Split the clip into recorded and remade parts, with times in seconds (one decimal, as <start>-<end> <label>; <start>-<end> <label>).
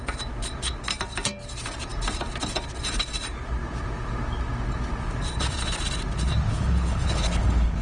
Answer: 0.0-6.5 recorded; 6.5-7.8 remade